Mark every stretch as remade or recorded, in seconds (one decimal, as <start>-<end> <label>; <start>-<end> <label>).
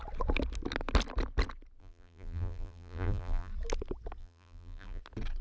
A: 0.0-1.8 recorded; 1.8-3.5 remade; 3.5-4.2 recorded; 4.2-5.0 remade; 5.0-5.4 recorded